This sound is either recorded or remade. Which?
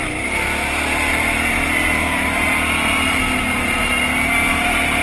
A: recorded